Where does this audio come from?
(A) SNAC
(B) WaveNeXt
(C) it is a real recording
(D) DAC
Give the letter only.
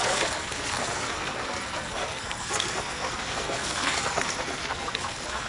A